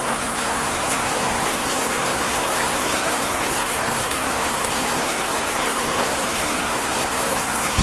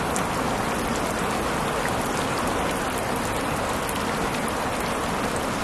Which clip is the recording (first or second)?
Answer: second